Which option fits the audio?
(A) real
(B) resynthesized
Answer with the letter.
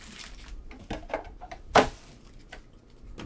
A